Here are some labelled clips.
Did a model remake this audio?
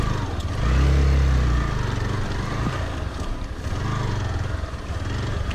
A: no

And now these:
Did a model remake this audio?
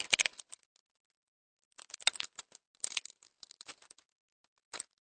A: no